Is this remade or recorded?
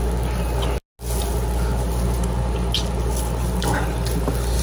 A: recorded